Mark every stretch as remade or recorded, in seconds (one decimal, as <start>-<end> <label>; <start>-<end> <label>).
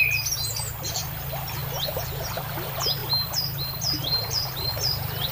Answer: 0.0-5.3 recorded